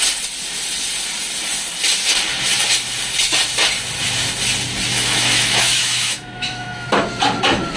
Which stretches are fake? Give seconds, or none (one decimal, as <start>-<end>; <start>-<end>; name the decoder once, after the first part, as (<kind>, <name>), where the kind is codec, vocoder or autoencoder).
4.9-6.9 (autoencoder, DAC-VAE)

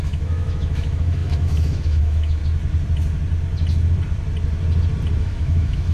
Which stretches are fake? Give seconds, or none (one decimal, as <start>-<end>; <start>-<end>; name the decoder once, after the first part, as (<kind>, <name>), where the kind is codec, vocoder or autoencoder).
0.0-2.4 (autoencoder, DAC-VAE); 5.2-5.9

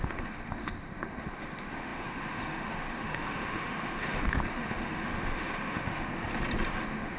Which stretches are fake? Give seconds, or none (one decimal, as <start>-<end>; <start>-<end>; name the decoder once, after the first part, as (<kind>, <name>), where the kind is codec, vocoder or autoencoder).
0.0-6.1 (autoencoder, DAC-VAE); 6.7-7.2